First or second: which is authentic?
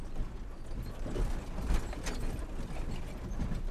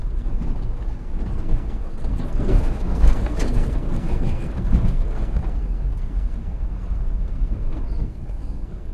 first